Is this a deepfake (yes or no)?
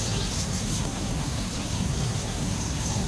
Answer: yes